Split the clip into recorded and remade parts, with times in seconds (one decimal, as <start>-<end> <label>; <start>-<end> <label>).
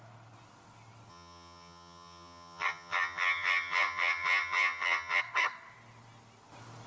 0.0-1.1 recorded; 1.1-5.2 remade; 5.2-6.9 recorded